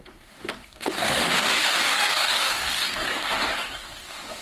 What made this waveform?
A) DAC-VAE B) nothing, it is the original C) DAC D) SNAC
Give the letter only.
C